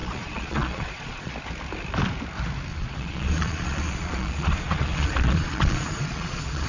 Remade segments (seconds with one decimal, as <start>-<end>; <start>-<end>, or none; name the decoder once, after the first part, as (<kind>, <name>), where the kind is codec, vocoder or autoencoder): 0.0-1.3 (vocoder, Vocos); 2.7-6.7